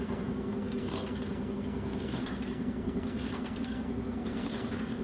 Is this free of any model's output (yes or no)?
no